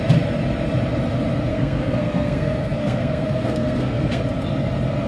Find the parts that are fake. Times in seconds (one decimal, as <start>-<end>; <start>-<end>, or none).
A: 1.5-4.2